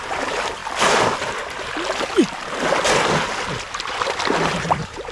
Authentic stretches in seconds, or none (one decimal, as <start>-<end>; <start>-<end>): 0.6-3.7